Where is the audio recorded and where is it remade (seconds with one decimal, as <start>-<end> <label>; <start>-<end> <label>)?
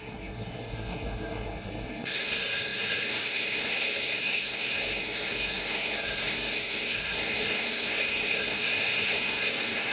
0.0-9.9 remade